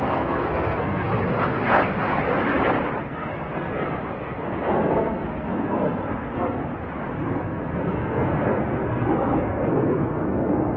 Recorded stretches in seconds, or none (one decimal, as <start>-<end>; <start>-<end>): 1.1-3.0; 6.6-7.3